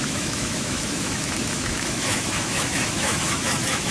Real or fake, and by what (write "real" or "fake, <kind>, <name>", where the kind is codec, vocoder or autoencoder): fake, autoencoder, DAC-VAE